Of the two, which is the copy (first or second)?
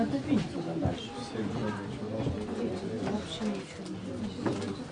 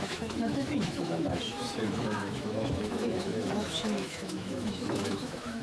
second